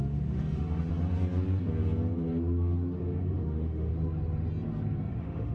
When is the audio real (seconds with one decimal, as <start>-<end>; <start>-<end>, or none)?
0.9-3.0; 3.9-5.1